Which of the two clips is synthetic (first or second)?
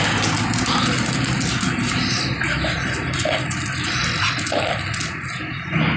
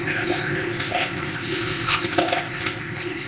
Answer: second